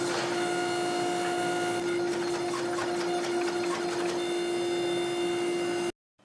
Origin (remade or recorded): recorded